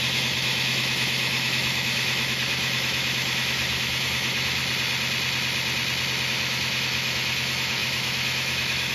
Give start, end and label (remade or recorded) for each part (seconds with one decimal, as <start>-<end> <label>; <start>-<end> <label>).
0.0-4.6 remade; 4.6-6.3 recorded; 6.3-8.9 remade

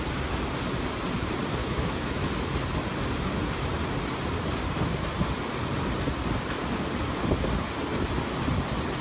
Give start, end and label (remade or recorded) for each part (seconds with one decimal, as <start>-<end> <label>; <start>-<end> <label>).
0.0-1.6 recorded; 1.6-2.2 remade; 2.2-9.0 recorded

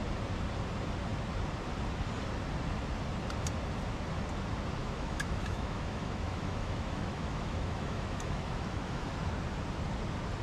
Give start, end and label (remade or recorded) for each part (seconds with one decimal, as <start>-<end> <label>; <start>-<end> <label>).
0.0-4.8 recorded; 4.8-9.1 remade; 9.1-10.4 recorded

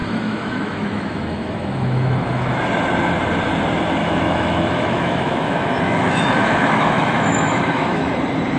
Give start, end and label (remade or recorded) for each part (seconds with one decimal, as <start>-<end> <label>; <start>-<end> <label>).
0.0-2.6 remade; 2.6-4.0 recorded; 4.0-8.1 remade; 8.1-8.6 recorded

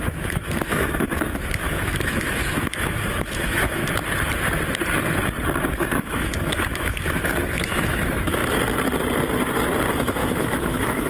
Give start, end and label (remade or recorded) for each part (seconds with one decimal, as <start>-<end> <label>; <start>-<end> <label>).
0.0-3.8 remade; 3.8-5.7 recorded; 5.7-8.4 remade; 8.4-9.9 recorded; 9.9-11.1 remade

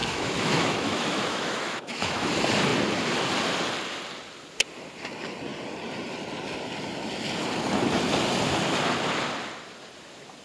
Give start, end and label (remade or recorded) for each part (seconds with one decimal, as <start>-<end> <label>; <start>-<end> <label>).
0.0-2.3 remade; 2.3-10.4 recorded

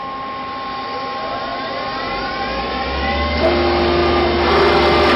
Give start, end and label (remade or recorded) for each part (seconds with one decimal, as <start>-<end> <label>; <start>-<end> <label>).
0.0-5.2 recorded